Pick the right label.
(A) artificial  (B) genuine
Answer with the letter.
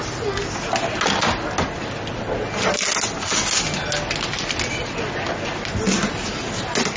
B